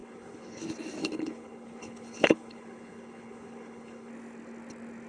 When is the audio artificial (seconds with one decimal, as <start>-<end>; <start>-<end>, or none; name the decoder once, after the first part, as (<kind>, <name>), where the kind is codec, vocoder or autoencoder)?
0.0-0.6 (codec, HILCodec); 1.0-4.1